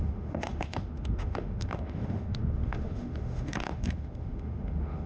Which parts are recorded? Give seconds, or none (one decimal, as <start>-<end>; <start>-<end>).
none